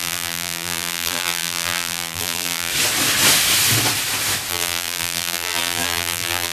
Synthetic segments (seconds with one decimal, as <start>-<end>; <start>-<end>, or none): 0.0-2.7; 4.5-6.5

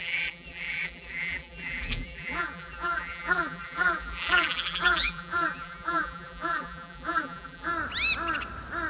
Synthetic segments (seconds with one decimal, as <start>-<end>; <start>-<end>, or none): 0.0-7.7

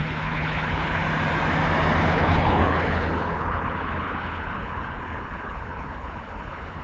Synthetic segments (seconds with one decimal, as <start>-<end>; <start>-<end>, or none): 0.0-1.0; 2.0-6.8

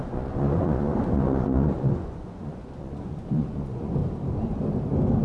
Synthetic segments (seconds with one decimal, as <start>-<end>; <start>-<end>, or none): 0.0-4.0

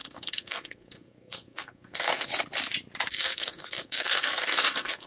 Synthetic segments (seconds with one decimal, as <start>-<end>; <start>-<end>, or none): 0.0-2.3; 3.1-5.1